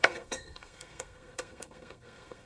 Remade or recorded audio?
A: remade